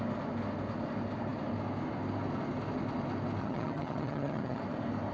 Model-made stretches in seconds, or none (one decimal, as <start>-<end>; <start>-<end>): 3.4-4.6